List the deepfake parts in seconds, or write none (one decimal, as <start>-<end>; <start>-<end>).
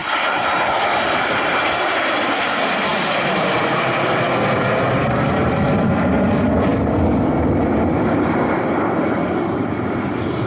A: 2.9-5.4; 6.7-9.0